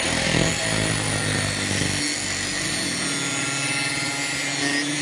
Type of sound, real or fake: real